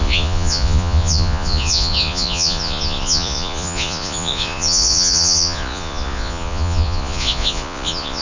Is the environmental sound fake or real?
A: fake